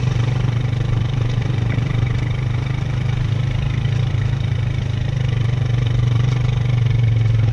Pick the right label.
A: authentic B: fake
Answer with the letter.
B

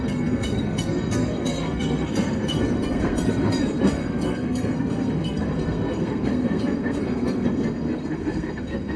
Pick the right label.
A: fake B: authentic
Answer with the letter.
A